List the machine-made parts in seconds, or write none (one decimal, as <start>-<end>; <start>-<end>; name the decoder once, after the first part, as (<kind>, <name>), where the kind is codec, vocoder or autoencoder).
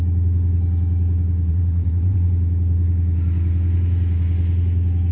1.5-2.3 (vocoder, WaveNeXt)